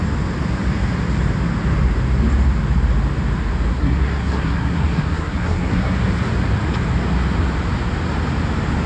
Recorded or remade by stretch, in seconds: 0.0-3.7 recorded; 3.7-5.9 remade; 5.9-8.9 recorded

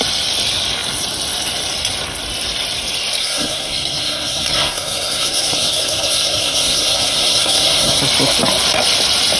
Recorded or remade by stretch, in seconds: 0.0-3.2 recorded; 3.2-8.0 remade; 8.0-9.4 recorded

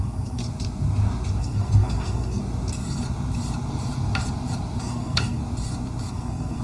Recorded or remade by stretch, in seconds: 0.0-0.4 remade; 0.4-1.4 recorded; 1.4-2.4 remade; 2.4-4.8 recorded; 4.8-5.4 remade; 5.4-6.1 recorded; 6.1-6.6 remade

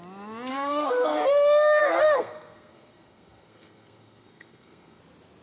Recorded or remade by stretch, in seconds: 0.0-0.5 recorded; 0.5-1.3 remade; 1.3-1.8 recorded; 1.8-5.0 remade; 5.0-5.4 recorded

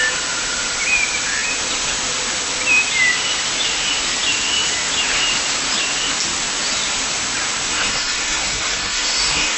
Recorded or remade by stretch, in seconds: 0.0-7.7 recorded; 7.7-9.6 remade